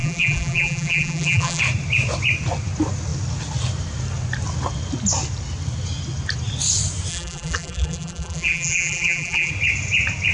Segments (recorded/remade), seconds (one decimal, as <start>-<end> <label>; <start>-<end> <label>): 0.0-1.6 remade; 1.6-7.1 recorded; 7.1-9.5 remade; 9.5-10.3 recorded